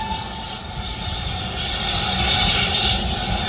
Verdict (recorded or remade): remade